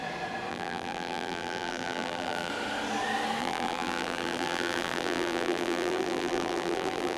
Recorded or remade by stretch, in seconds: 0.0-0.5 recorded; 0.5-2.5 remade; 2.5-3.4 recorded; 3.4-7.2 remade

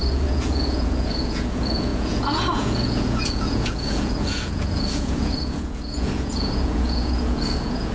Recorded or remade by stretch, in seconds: 0.0-7.9 remade

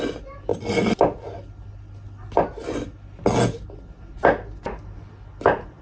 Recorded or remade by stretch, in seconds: 0.0-5.8 recorded

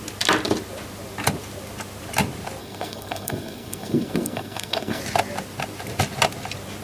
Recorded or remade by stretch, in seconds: 0.0-2.6 recorded; 2.6-5.0 remade; 5.0-6.8 recorded

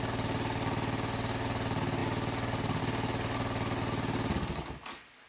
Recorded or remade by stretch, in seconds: 0.0-5.3 recorded

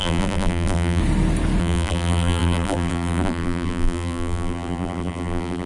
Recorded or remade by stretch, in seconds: 0.0-1.0 remade; 1.0-1.6 recorded; 1.6-5.7 remade

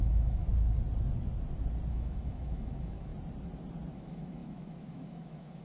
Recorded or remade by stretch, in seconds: 0.0-0.5 remade; 0.5-1.9 recorded; 1.9-3.1 remade; 3.1-3.9 recorded; 3.9-5.6 remade

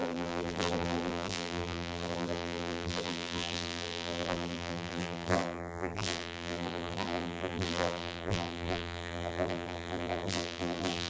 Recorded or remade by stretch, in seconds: 0.0-11.1 remade